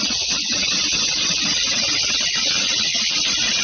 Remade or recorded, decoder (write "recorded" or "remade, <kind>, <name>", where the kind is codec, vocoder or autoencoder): remade, vocoder, WaveNeXt